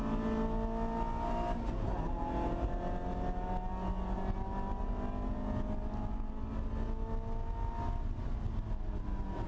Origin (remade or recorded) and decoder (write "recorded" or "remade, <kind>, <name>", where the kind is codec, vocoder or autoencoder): recorded